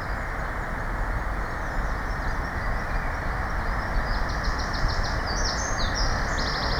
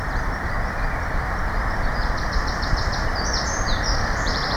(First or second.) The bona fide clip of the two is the first